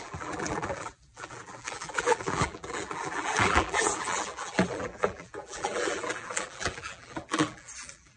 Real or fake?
fake